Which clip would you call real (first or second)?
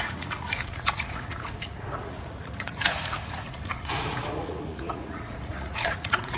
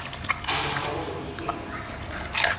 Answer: second